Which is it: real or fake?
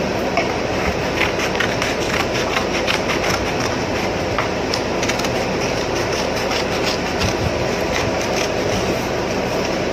fake